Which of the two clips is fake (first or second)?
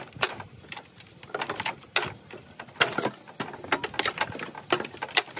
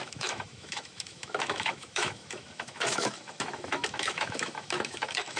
second